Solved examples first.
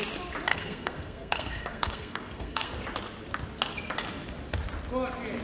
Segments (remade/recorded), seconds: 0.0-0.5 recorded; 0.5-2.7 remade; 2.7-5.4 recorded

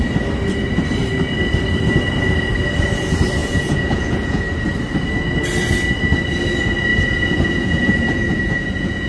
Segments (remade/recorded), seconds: 0.0-3.4 recorded; 3.4-4.4 remade; 4.4-6.9 recorded; 6.9-9.1 remade

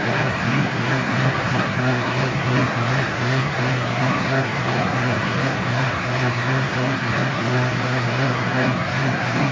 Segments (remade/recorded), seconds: 0.0-9.5 remade

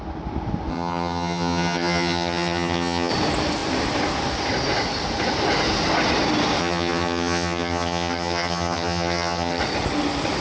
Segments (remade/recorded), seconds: 0.0-0.7 recorded; 0.7-3.1 remade; 3.1-6.6 recorded; 6.6-9.6 remade; 9.6-10.4 recorded

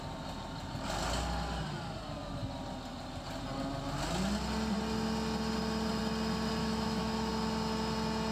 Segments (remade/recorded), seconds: 0.0-6.6 recorded; 6.6-7.3 remade; 7.3-8.3 recorded